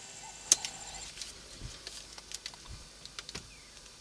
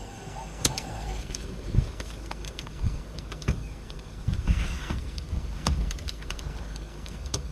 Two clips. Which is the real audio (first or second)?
first